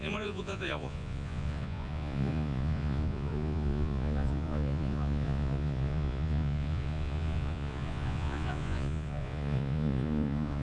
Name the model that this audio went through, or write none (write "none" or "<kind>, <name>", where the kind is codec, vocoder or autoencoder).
vocoder, Vocos